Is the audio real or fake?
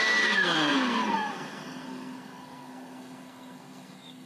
fake